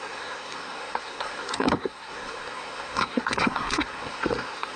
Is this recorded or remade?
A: remade